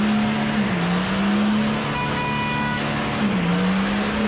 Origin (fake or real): real